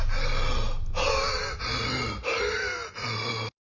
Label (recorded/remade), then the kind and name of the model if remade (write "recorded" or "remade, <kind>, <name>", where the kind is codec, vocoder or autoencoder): recorded